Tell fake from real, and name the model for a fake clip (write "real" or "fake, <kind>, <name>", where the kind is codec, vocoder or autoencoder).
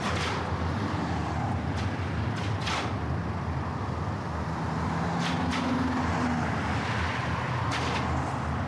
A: real